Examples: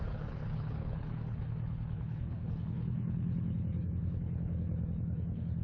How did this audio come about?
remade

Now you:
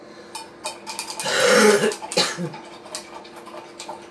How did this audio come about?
recorded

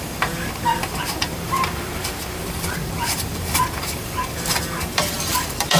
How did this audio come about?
remade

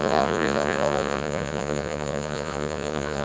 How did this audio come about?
remade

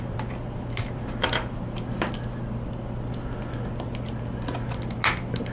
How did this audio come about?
recorded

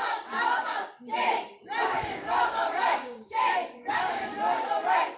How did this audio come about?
remade